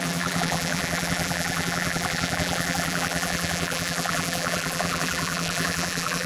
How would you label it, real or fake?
fake